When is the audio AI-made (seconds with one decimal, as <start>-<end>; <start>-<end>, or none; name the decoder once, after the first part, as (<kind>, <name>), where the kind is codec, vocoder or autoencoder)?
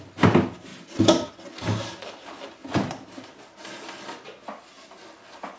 0.7-1.3 (vocoder, BigVGAN v2); 2.6-3.4